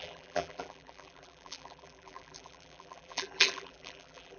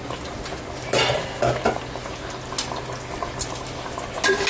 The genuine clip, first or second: second